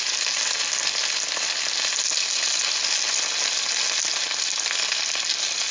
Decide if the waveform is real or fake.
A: real